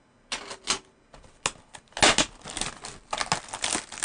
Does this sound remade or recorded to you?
recorded